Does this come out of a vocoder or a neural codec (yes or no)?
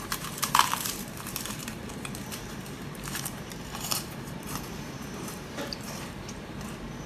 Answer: yes